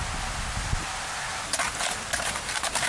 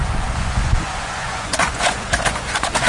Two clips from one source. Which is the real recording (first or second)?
first